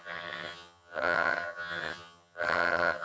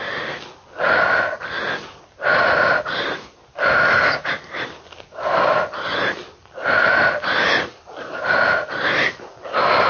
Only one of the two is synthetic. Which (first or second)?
first